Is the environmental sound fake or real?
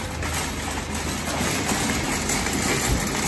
real